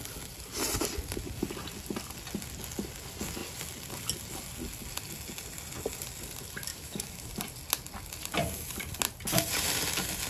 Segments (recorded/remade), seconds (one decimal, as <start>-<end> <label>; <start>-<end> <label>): 0.0-6.7 recorded; 6.7-7.3 remade; 7.3-10.3 recorded